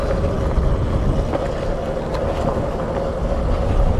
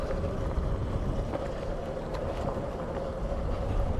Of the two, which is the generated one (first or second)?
second